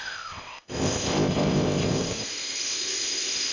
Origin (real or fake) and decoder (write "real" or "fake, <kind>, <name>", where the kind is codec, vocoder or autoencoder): fake, codec, ZipCodec